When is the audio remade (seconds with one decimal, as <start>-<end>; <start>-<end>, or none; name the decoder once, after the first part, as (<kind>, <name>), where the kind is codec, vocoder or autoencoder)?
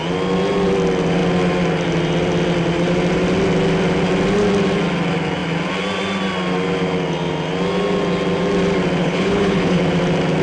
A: 9.0-9.8 (codec, HILCodec)